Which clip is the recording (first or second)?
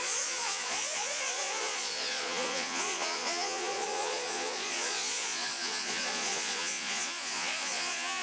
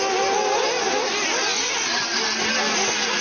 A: second